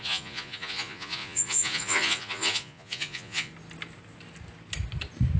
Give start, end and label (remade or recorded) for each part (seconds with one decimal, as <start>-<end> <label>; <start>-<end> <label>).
0.0-3.5 remade; 3.5-5.4 recorded